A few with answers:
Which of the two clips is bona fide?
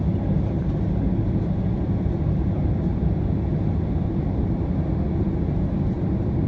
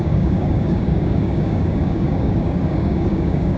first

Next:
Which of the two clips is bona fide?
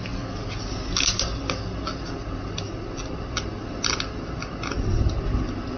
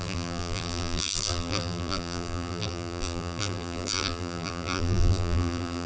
first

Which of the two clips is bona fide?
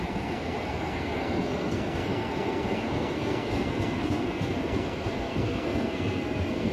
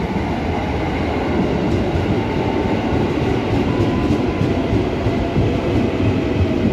second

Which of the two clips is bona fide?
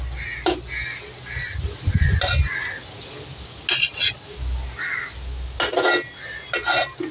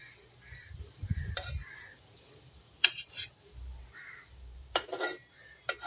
first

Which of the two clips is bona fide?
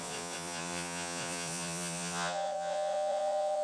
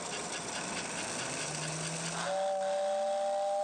second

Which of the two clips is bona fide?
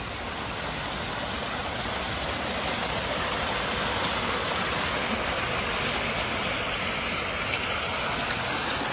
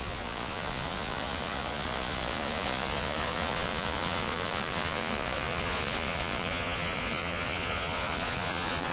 first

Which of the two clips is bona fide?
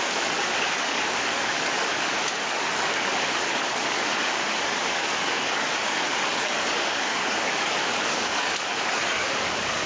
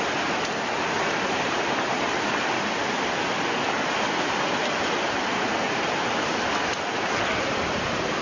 second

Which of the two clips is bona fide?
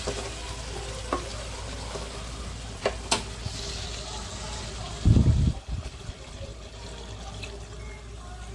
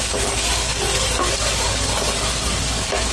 first